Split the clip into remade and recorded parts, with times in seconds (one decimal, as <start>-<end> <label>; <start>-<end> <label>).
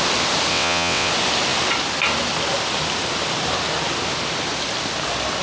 0.0-0.5 recorded; 0.5-1.1 remade; 1.1-5.4 recorded